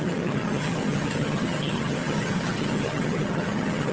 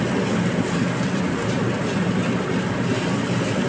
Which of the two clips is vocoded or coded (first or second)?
first